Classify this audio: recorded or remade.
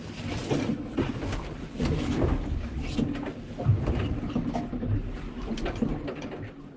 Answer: recorded